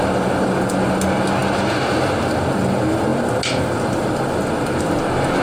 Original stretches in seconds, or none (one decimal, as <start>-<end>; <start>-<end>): 0.0-5.4